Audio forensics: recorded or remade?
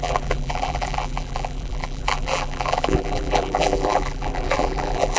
remade